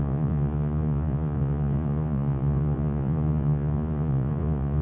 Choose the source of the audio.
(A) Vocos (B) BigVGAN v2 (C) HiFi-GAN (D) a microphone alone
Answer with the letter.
A